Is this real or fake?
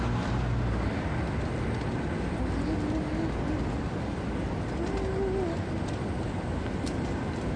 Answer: real